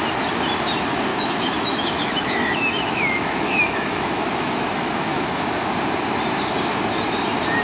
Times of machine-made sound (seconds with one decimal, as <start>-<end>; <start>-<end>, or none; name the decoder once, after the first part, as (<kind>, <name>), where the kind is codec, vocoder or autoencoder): 1.1-5.7 (autoencoder, DAC-VAE)